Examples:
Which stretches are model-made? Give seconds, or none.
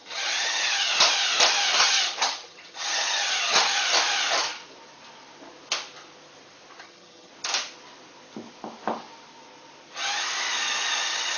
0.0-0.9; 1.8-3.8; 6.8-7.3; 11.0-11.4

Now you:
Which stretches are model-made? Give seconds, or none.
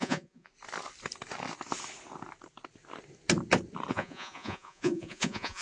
0.0-0.5; 3.9-5.6